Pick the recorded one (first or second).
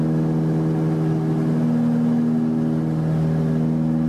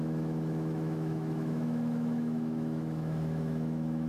first